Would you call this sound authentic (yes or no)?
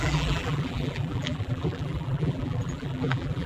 no